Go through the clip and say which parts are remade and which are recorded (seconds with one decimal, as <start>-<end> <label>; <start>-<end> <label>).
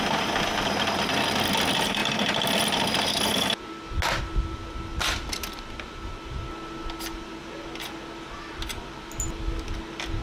0.0-10.2 recorded